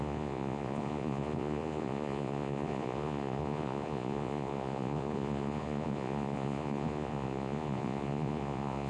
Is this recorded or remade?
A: remade